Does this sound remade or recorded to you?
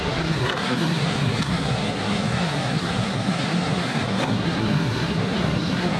remade